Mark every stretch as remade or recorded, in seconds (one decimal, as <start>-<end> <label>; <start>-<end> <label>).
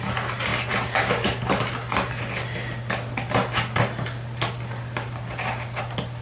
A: 0.0-6.2 recorded